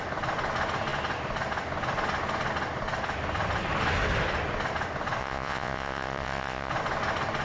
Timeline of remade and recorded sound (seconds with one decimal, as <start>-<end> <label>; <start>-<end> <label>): 0.0-5.2 recorded; 5.2-6.7 remade; 6.7-7.4 recorded